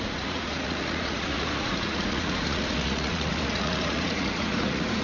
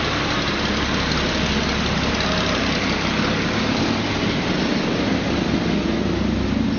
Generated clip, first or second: first